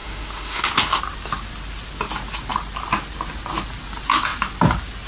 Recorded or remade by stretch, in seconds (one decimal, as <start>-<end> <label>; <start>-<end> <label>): 0.0-1.0 remade; 1.0-5.1 recorded